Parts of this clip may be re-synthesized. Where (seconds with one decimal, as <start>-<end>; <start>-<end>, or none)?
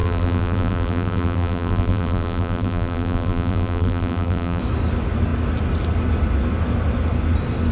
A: 0.0-4.6